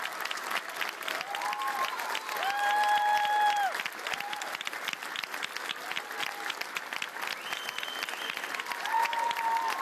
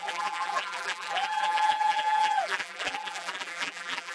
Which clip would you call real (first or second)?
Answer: first